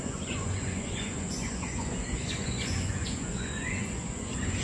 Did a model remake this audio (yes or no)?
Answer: yes